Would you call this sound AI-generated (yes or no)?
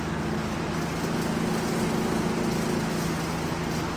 no